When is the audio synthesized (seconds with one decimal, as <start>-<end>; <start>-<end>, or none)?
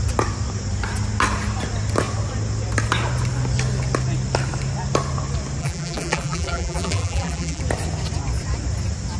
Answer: 5.6-7.6